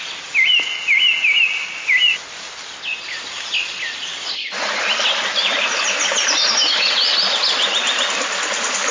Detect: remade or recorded recorded